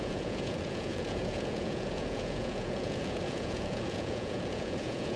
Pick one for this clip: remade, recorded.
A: remade